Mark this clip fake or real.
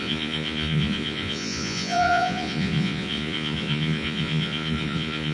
fake